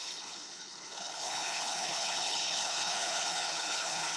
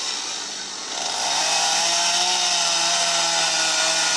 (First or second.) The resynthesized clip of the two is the first